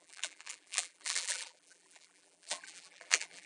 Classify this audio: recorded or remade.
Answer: remade